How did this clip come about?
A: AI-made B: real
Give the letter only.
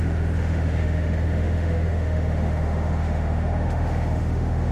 A